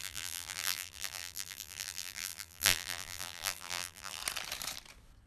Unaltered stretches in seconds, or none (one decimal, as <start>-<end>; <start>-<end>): 4.2-5.3